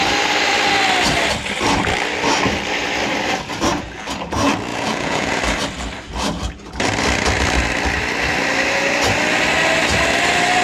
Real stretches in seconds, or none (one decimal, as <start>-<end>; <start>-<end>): 0.0-4.7; 5.4-10.6